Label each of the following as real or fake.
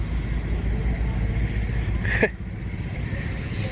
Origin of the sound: real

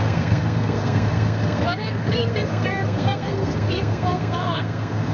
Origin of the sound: fake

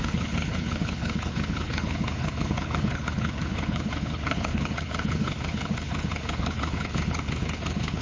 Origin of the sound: fake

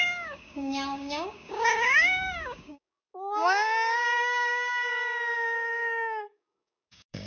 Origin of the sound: fake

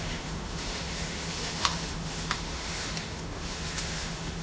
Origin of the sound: fake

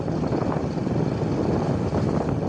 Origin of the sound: real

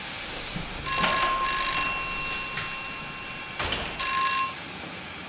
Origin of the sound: real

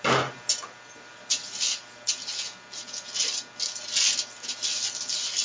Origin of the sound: real